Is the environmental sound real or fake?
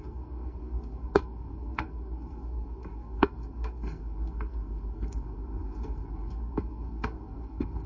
fake